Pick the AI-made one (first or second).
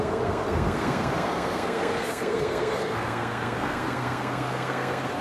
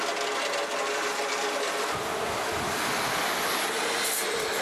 first